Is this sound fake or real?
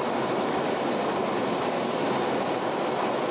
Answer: real